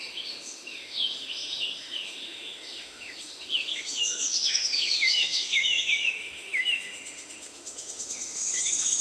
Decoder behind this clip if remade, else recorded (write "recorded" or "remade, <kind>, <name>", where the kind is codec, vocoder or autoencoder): remade, autoencoder, DAC-VAE